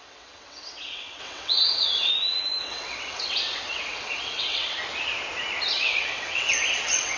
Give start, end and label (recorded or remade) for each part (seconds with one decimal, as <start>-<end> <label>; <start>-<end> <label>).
0.0-2.1 remade; 2.1-2.6 recorded; 2.6-4.8 remade; 4.8-5.7 recorded; 5.7-7.2 remade